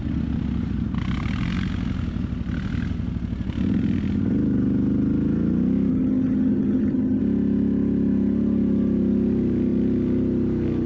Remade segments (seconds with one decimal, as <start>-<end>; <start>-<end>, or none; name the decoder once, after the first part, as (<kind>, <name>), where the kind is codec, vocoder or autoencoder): 5.9-7.2 (vocoder, HiFi-GAN)